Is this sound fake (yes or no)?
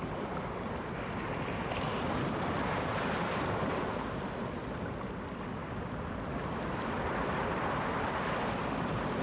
yes